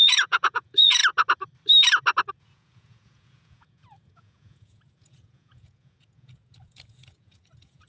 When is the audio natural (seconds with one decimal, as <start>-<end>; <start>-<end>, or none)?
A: 1.0-2.3